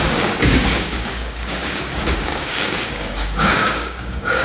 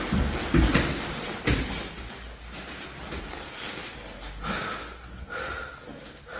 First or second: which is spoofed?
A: first